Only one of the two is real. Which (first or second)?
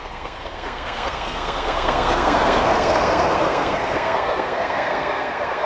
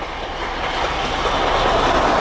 second